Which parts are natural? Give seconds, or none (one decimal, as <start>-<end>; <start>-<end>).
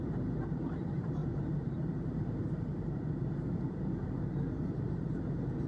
0.0-5.7